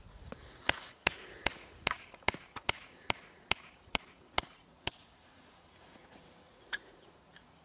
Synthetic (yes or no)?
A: yes